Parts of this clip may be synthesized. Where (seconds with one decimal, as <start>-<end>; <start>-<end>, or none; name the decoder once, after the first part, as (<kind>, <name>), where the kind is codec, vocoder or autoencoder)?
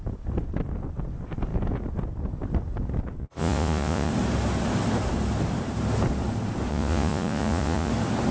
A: 3.2-4.1 (vocoder, Vocos); 6.7-7.9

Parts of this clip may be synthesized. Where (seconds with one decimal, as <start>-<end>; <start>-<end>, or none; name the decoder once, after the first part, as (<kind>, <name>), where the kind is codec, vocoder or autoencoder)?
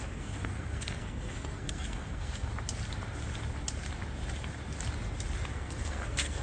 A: 0.0-2.5 (codec, SNAC); 5.5-6.4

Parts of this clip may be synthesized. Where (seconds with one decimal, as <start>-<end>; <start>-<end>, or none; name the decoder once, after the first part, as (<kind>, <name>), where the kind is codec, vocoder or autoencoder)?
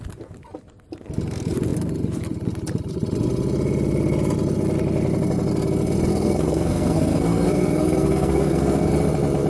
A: 6.1-8.9 (codec, SNAC)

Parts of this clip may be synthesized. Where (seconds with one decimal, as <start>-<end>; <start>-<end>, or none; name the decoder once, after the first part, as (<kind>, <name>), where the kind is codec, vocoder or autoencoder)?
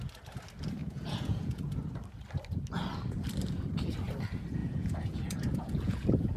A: 0.8-1.8 (vocoder, Vocos); 4.6-6.4